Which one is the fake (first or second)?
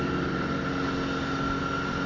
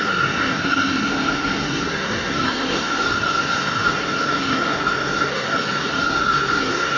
second